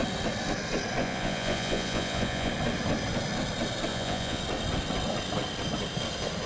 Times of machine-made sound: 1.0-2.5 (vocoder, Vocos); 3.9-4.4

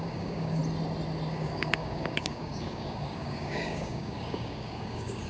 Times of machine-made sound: 0.0-0.6 (codec, DAC); 1.3-5.3

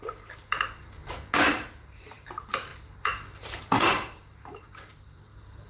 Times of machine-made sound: 0.0-1.0 (vocoder, BigVGAN v2); 1.5-5.7

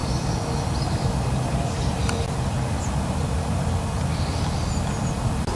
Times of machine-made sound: none

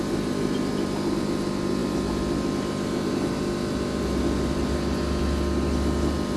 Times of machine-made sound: none

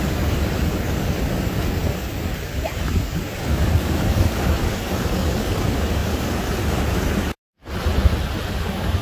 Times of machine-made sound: 0.0-7.6 (codec, DAC); 8.6-9.0